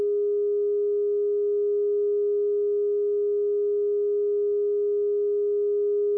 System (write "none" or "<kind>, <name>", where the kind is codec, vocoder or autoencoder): none